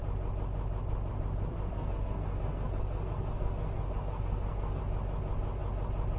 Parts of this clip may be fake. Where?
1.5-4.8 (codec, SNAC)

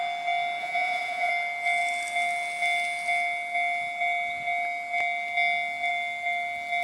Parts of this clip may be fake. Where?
0.6-1.3 (vocoder, Vocos)

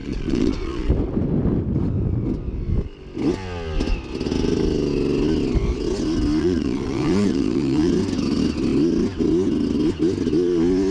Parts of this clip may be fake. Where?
0.0-0.9 (vocoder, Vocos); 6.4-7.9

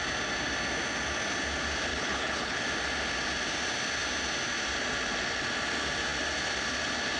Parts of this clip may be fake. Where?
1.9-2.6 (codec, HILCodec)

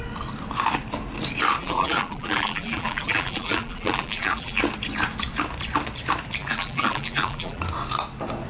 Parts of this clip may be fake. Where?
1.6-4.6 (vocoder, BigVGAN v2); 6.4-7.6

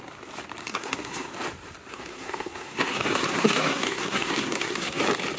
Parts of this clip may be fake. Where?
0.6-1.3 (codec, SNAC); 1.9-5.0

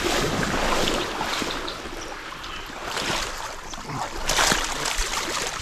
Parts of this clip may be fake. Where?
0.0-5.0 (vocoder, BigVGAN v2)